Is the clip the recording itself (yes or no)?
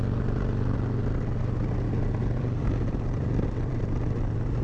no